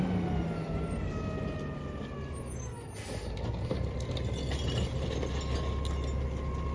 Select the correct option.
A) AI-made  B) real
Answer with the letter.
B